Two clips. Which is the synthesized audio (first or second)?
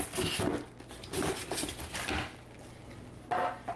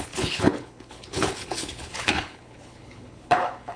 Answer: second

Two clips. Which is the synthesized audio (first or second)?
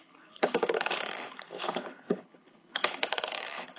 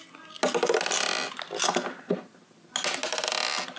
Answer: first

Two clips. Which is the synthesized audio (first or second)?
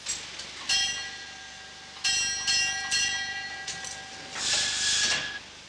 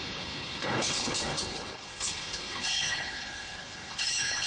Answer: second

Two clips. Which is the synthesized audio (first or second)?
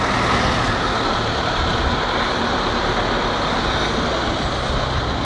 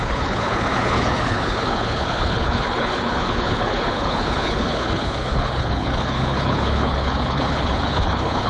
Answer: second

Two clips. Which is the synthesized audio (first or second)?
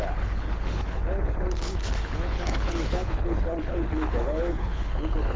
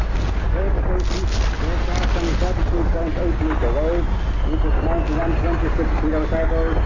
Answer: first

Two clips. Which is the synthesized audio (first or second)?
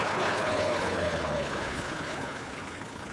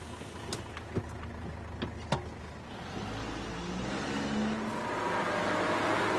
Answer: first